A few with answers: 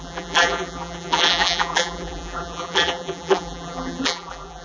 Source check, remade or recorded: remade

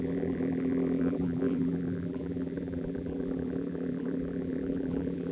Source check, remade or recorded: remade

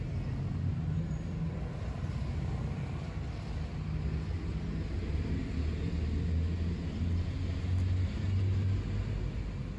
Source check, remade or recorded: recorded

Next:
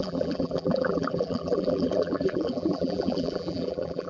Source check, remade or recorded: remade